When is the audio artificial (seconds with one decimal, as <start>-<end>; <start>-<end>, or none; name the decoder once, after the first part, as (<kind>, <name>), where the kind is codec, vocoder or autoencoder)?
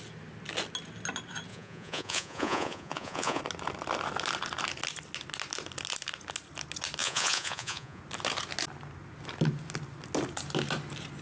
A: 1.5-3.4 (vocoder, Vocos); 7.0-8.0